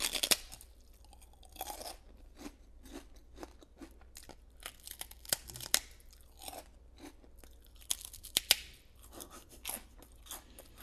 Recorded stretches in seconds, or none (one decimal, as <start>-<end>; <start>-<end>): 0.0-10.8